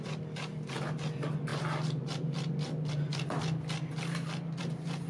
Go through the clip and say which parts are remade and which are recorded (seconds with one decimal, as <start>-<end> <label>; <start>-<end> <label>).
0.0-5.1 recorded